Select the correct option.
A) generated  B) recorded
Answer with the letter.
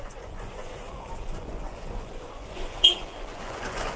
A